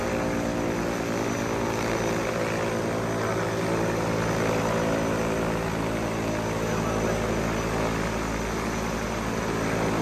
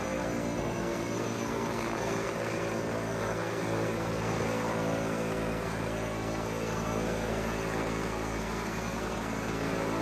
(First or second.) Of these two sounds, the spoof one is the second